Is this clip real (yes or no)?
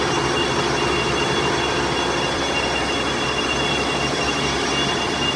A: yes